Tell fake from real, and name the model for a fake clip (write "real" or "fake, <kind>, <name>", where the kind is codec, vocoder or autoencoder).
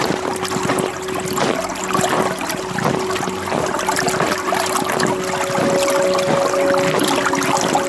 real